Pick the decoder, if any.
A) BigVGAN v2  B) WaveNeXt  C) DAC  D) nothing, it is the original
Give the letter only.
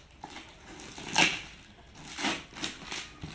D